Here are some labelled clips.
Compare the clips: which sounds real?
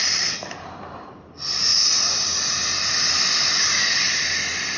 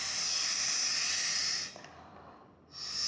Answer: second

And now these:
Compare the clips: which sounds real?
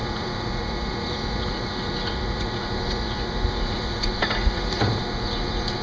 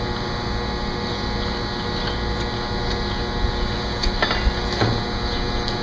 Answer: second